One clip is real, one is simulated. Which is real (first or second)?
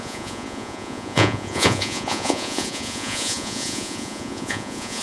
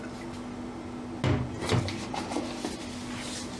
second